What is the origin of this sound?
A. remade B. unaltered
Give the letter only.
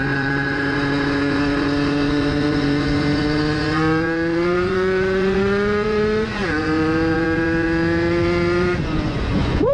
A